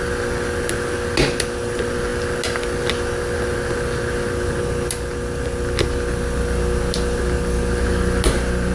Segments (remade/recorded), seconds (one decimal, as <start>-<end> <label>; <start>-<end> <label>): 0.0-8.7 recorded